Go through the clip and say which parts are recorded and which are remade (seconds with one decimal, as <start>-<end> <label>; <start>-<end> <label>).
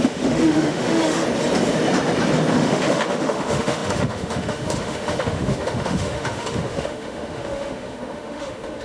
0.0-1.2 remade; 1.2-2.5 recorded; 2.5-8.8 remade